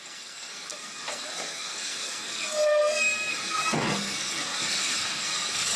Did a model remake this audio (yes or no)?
yes